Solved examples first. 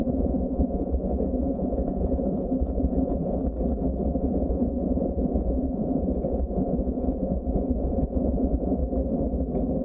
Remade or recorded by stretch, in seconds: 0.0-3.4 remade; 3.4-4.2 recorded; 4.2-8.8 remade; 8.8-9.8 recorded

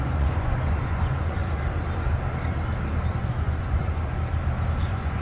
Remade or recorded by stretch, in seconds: 0.0-1.4 remade; 1.4-3.1 recorded; 3.1-4.0 remade; 4.0-4.8 recorded; 4.8-5.2 remade

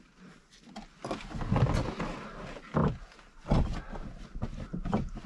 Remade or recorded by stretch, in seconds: 0.0-5.3 recorded

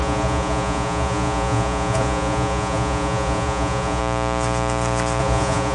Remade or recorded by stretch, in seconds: 0.0-4.0 remade; 4.0-5.2 recorded; 5.2-5.7 remade

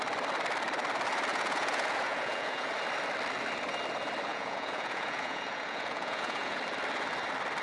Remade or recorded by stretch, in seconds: 0.0-1.3 recorded; 1.3-2.7 remade; 2.7-4.3 recorded; 4.3-6.6 remade; 6.6-7.6 recorded

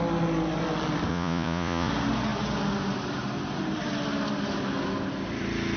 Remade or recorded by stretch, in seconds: 0.0-1.1 recorded; 1.1-1.9 remade; 1.9-5.8 recorded

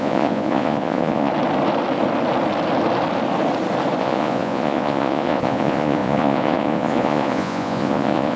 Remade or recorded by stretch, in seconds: 0.0-1.3 remade; 1.3-4.0 recorded; 4.0-8.4 remade